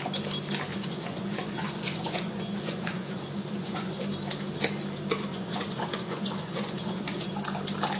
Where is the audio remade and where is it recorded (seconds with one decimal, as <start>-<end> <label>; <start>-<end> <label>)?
0.0-0.7 recorded; 0.7-4.0 remade; 4.0-5.3 recorded; 5.3-7.3 remade; 7.3-8.0 recorded